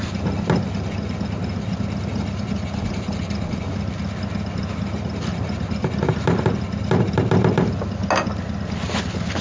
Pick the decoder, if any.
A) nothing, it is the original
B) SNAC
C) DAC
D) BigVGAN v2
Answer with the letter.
A